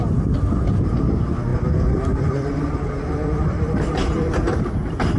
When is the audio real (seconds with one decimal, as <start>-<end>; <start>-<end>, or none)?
0.0-5.2